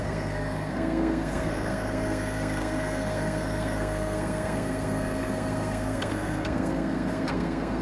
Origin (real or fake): fake